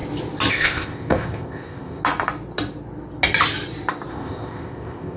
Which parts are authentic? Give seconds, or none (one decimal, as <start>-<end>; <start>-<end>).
0.0-0.5; 2.0-4.1